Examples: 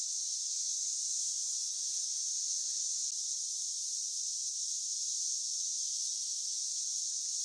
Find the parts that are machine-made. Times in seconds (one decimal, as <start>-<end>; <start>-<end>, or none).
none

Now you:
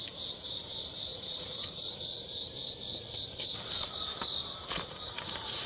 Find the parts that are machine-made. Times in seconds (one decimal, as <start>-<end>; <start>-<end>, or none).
1.1-1.9; 4.6-5.7

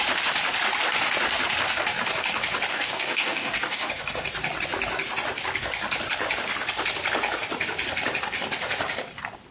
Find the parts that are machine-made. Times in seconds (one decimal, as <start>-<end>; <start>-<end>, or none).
2.7-3.9

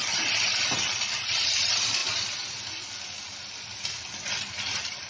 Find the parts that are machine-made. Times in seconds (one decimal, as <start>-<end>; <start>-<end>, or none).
none

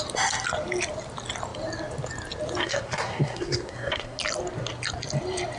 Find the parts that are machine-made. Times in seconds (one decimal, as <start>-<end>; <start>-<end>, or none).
2.6-4.2

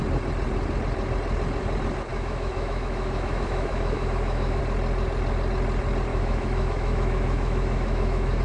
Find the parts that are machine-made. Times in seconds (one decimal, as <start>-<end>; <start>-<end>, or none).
2.1-4.6; 6.1-8.4

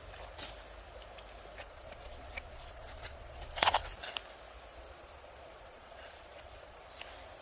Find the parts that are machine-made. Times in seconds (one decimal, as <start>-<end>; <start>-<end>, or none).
1.6-3.9; 4.7-6.8